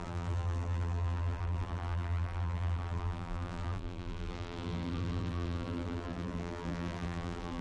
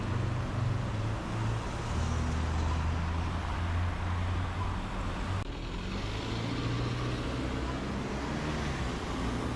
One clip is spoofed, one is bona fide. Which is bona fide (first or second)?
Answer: second